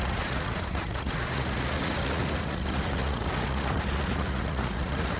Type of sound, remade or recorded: remade